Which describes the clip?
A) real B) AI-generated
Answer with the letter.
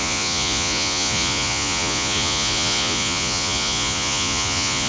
B